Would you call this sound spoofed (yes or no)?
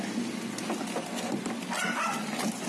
no